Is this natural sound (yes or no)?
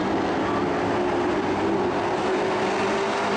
yes